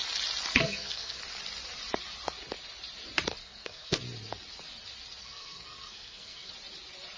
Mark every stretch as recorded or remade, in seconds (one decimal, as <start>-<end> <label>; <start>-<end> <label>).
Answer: 0.0-0.5 recorded; 0.5-1.2 remade; 1.2-3.4 recorded; 3.4-4.0 remade; 4.0-5.2 recorded; 5.2-6.5 remade; 6.5-7.2 recorded